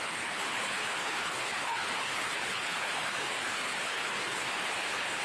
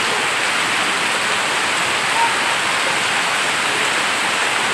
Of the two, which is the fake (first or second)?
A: first